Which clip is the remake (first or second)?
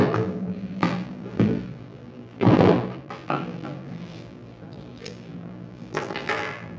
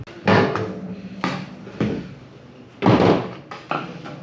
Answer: first